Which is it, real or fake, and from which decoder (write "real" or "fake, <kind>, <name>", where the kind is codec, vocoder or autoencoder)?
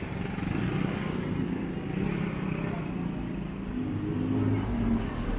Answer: real